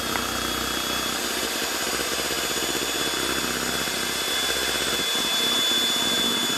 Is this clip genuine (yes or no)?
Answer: yes